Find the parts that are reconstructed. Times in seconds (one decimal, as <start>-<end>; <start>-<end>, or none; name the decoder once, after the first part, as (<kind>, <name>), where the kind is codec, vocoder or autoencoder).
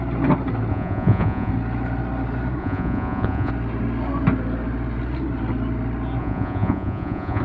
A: 0.7-1.5 (vocoder, Vocos); 2.6-3.5; 6.2-7.4